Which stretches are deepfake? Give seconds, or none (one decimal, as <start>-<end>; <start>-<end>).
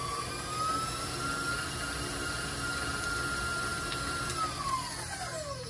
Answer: none